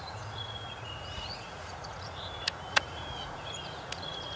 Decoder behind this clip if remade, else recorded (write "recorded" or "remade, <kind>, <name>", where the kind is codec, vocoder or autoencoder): remade, vocoder, Vocos